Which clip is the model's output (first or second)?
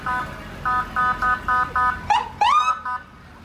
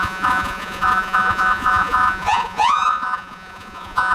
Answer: second